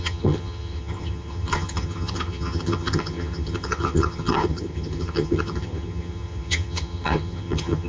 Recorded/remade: remade